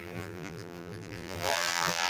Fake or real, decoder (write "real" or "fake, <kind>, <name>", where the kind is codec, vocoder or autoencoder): fake, vocoder, BigVGAN v2